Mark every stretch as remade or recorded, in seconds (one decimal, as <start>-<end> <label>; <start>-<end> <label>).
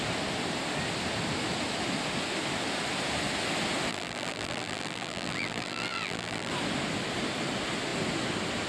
0.0-3.9 recorded; 3.9-6.5 remade; 6.5-8.7 recorded